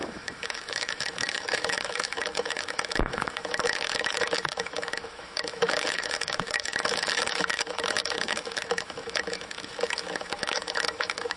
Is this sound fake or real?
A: fake